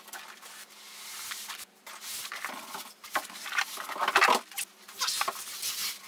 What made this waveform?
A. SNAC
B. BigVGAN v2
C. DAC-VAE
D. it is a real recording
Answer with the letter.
D